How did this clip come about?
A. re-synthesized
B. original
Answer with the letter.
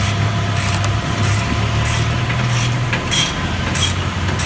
A